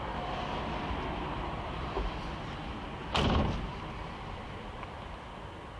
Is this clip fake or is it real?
real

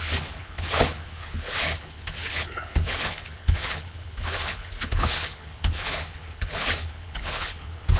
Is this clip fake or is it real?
fake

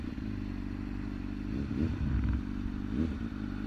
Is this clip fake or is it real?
fake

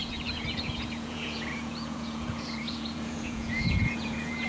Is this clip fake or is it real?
fake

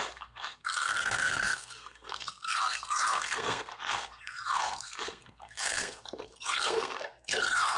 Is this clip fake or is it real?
fake